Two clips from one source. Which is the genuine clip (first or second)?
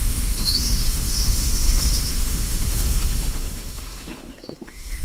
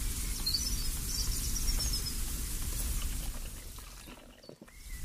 second